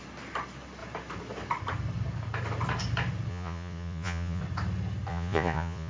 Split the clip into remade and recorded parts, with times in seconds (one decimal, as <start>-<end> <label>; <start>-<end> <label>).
0.0-3.3 recorded; 3.3-4.4 remade; 4.4-5.1 recorded; 5.1-5.9 remade